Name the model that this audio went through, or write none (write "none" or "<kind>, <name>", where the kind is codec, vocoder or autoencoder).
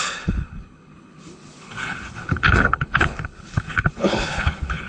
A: codec, HILCodec